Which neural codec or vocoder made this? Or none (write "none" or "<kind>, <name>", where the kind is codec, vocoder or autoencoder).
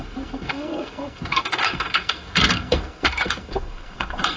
codec, SNAC